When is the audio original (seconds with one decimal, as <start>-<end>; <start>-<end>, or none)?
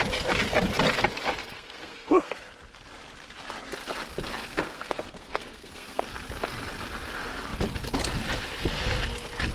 0.0-1.4; 2.5-4.4; 6.0-9.5